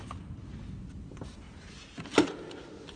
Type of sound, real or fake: real